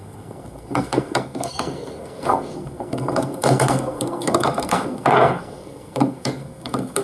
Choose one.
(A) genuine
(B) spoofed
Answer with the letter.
B